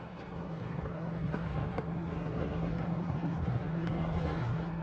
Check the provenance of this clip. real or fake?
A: fake